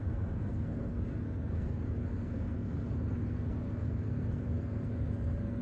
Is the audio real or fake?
fake